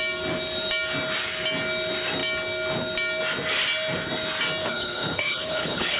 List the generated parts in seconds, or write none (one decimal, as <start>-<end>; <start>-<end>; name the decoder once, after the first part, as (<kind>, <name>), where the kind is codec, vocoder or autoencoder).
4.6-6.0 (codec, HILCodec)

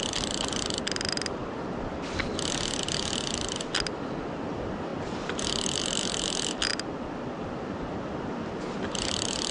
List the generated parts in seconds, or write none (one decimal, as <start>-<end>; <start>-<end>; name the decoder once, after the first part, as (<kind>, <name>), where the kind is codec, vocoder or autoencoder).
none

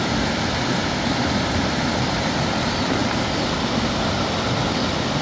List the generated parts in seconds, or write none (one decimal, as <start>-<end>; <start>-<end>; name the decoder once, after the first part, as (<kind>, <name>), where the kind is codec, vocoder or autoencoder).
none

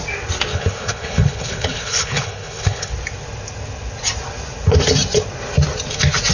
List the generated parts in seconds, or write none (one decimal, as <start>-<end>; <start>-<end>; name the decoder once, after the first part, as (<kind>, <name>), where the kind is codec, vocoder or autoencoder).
0.5-2.9 (codec, HILCodec)

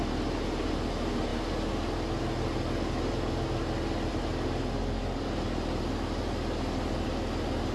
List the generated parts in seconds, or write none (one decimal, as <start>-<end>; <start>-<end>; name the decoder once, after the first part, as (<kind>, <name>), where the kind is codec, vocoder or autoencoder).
none

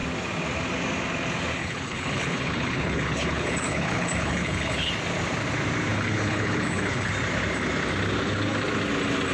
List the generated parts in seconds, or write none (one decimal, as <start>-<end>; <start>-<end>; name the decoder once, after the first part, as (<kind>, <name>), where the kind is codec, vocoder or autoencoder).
1.6-4.9 (codec, HILCodec); 5.9-7.1

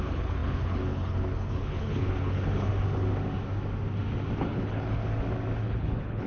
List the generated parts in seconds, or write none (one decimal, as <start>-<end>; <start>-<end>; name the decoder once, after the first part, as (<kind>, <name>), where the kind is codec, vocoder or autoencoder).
0.0-2.7 (codec, HILCodec); 4.4-5.0; 5.6-6.3